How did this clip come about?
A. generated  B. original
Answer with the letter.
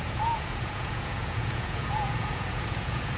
A